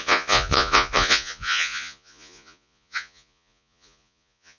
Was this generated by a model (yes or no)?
yes